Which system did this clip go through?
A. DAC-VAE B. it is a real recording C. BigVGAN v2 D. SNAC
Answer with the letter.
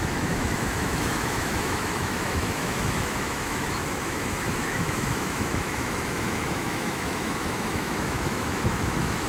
A